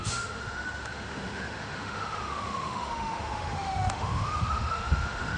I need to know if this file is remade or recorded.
remade